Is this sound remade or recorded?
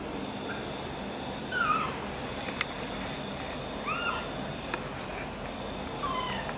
recorded